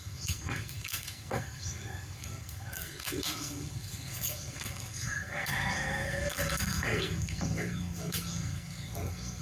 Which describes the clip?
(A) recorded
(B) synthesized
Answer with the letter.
B